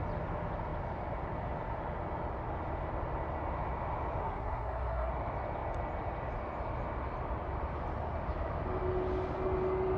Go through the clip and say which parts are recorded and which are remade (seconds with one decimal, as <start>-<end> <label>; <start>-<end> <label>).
0.0-4.2 recorded; 4.2-5.1 remade; 5.1-10.0 recorded